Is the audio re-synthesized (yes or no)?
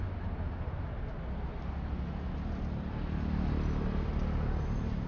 no